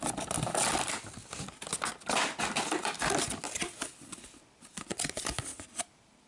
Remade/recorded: recorded